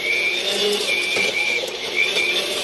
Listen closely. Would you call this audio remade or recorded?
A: remade